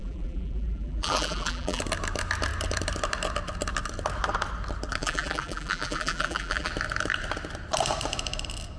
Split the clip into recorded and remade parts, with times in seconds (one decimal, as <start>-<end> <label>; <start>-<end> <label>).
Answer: 0.0-1.8 remade; 1.8-5.0 recorded; 5.0-6.7 remade; 6.7-8.8 recorded